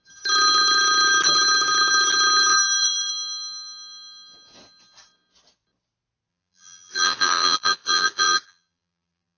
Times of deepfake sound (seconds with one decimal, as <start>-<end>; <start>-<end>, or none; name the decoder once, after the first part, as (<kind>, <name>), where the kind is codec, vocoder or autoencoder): 2.5-3.1 (vocoder, BigVGAN v2); 6.3-9.4